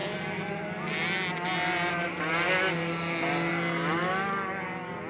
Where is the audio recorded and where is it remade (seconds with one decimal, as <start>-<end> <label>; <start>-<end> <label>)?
0.0-5.1 recorded

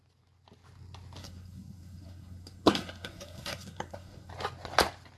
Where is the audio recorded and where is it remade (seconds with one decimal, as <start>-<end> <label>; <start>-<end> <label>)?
0.0-1.2 recorded; 1.2-4.3 remade; 4.3-5.2 recorded

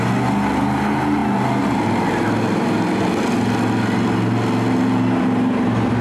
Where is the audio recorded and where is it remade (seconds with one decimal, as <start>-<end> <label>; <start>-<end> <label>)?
0.0-6.0 recorded